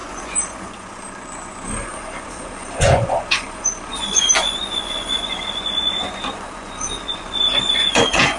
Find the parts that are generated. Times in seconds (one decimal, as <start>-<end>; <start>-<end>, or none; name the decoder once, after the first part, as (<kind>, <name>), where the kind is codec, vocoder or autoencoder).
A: 0.0-8.4 (vocoder, Vocos)